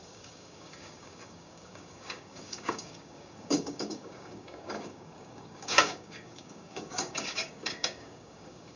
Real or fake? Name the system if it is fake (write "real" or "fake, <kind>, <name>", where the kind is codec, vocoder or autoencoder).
fake, codec, DAC